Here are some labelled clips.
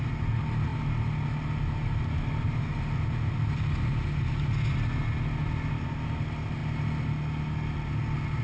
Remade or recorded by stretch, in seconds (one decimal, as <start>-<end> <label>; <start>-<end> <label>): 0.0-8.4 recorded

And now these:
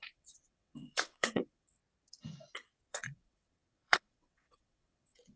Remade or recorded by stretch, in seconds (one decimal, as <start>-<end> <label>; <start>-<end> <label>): 0.0-1.8 remade; 1.8-2.9 recorded; 2.9-5.4 remade

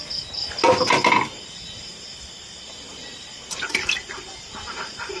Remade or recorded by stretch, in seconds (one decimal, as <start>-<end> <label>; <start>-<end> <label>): 0.0-0.4 remade; 0.4-3.5 recorded; 3.5-5.2 remade

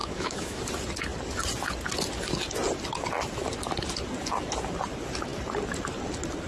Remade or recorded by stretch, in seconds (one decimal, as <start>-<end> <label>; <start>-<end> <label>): 0.0-0.6 remade; 0.6-6.5 recorded